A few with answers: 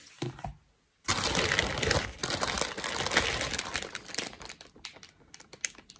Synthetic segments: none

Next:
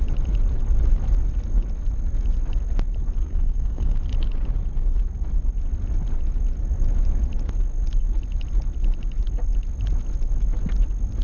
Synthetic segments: 3.2-4.0

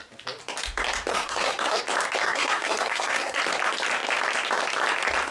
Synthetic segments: 1.1-1.8; 2.2-3.4

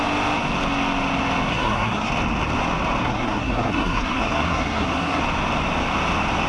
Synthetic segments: 1.5-2.1; 3.0-5.2